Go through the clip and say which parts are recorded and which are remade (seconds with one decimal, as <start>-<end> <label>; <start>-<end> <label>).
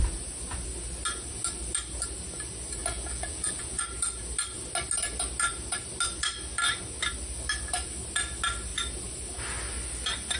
0.0-2.8 recorded; 2.8-3.8 remade; 3.8-10.4 recorded